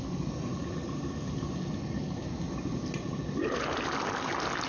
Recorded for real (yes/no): yes